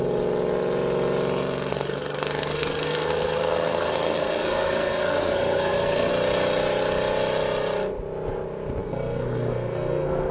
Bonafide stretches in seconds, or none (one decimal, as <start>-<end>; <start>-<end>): 0.0-1.7; 6.1-8.8